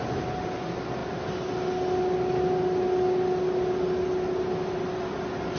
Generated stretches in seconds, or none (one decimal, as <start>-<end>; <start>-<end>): none